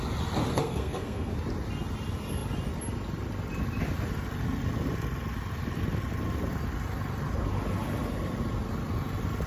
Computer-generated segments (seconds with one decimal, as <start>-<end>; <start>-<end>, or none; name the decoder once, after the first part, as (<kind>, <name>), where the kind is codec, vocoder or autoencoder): 0.5-1.3 (codec, SNAC)